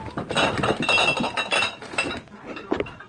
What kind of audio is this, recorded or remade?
recorded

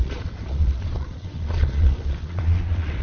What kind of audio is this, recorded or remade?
remade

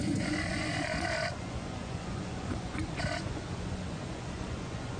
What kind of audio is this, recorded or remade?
remade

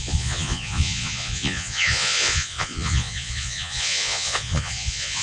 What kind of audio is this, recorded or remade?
remade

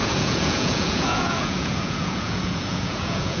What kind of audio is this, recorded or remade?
remade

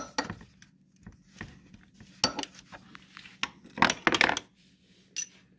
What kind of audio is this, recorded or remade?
recorded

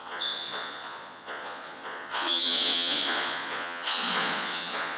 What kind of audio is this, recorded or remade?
remade